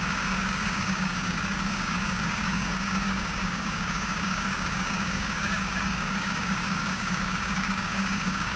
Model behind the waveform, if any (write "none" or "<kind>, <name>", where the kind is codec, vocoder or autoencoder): codec, DAC